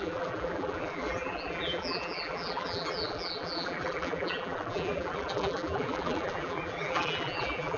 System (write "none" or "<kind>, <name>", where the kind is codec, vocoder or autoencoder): vocoder, BigVGAN v2